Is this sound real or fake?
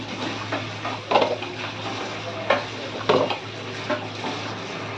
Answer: real